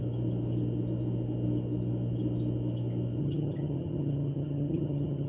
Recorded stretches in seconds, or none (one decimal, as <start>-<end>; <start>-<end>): 0.0-3.2